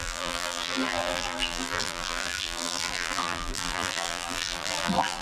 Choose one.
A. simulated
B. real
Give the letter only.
A